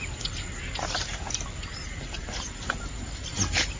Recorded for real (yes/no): yes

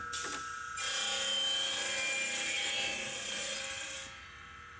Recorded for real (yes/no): yes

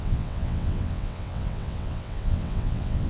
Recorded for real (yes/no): no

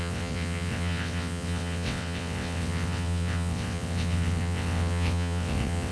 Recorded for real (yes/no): no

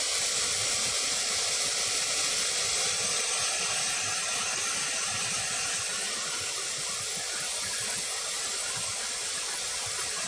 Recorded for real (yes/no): yes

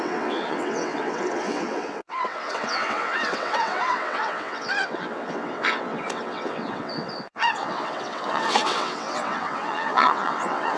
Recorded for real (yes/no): no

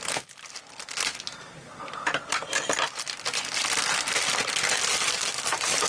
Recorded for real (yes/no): yes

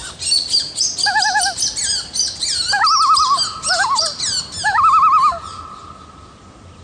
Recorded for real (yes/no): yes